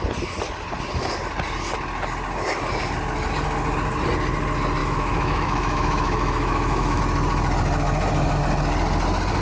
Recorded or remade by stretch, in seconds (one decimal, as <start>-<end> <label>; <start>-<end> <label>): 0.0-4.8 recorded; 4.8-7.0 remade; 7.0-9.4 recorded